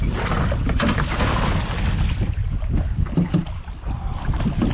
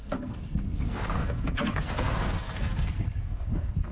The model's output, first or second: second